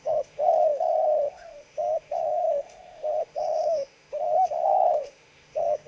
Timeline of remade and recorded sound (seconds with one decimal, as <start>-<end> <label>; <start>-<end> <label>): 0.0-5.9 remade